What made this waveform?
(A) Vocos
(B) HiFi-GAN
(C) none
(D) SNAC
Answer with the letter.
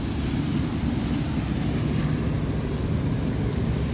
C